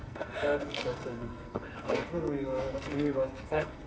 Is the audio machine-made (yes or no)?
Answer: yes